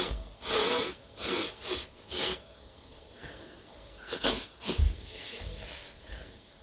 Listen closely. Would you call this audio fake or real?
fake